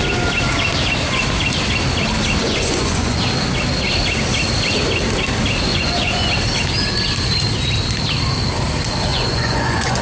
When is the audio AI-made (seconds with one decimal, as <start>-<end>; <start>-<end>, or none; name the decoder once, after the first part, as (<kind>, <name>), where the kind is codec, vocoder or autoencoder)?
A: 2.4-3.2 (vocoder, Vocos); 5.7-6.3; 9.1-10.0